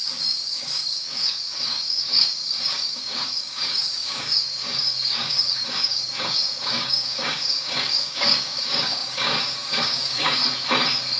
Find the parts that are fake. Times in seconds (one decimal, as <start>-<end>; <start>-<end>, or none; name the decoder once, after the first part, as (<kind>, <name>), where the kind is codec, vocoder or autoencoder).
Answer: 0.0-10.4 (codec, DAC)